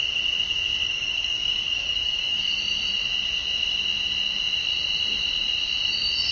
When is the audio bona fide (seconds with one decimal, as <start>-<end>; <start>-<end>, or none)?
0.0-0.8; 2.6-6.3